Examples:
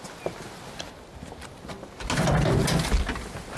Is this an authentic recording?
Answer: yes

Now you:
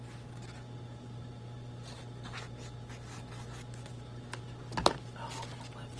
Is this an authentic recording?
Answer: yes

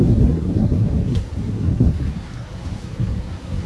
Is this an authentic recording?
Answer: no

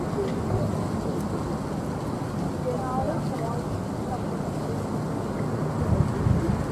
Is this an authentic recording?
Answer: yes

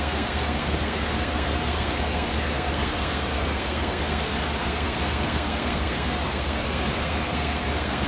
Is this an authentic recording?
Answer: no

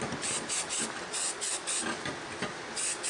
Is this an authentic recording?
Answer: yes